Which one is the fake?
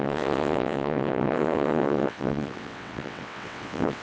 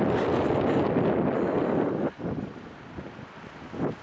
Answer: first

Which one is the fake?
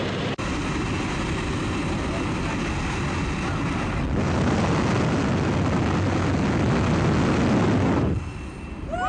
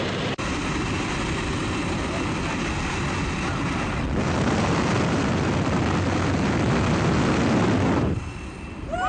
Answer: second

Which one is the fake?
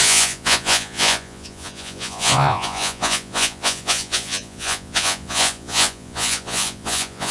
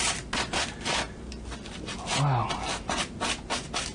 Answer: first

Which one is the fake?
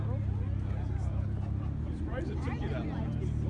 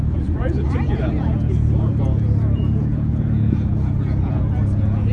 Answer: second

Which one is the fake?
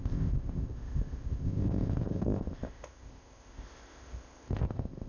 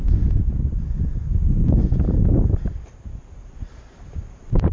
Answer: first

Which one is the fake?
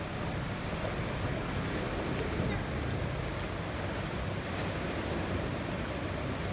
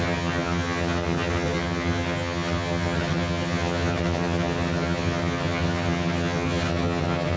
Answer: second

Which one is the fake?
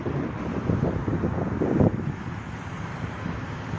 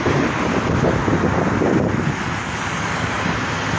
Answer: first